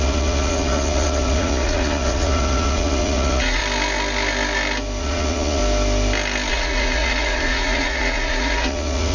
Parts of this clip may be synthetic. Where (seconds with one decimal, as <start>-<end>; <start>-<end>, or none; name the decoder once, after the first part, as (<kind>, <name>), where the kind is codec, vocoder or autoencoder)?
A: 0.0-3.6 (vocoder, Vocos); 5.0-5.6; 6.5-9.1